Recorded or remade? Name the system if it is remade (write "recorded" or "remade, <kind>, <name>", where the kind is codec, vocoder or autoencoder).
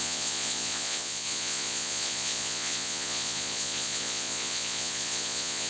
remade, vocoder, Vocos